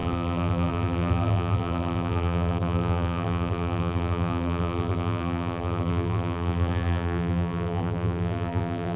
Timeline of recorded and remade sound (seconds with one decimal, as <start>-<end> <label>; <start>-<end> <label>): 0.0-9.0 remade